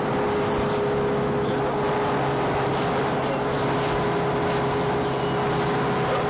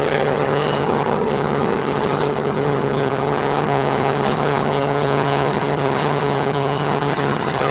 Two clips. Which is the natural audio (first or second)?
first